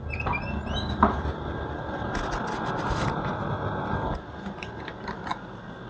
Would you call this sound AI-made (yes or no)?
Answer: no